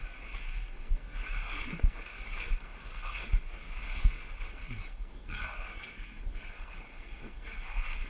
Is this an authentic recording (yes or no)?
no